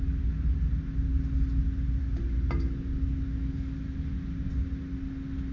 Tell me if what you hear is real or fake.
real